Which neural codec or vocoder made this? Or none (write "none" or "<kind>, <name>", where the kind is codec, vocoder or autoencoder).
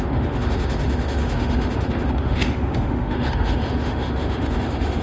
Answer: autoencoder, DAC-VAE